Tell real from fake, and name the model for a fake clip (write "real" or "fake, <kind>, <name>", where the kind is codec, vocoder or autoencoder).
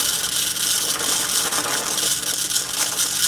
real